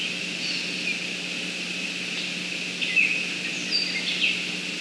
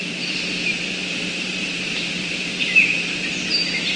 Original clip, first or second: first